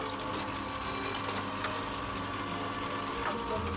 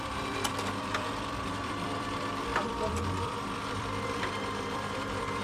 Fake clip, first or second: second